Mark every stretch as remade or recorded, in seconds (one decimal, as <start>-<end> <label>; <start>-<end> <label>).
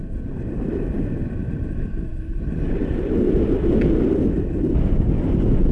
0.0-5.7 recorded